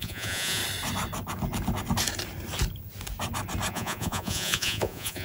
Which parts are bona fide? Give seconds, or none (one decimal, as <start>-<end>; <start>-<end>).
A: 0.6-3.7